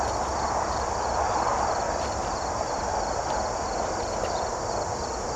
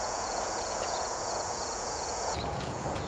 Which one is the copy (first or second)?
second